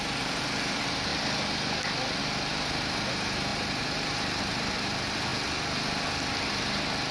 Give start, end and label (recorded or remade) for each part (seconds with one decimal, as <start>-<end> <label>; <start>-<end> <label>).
0.0-1.1 remade; 1.1-2.2 recorded; 2.2-5.3 remade; 5.3-7.1 recorded